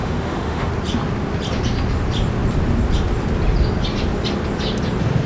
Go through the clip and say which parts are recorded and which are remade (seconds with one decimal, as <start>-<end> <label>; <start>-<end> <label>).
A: 0.0-0.7 remade; 0.7-5.3 recorded